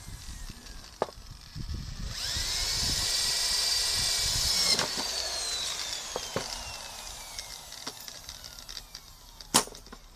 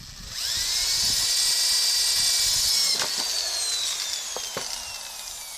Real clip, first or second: second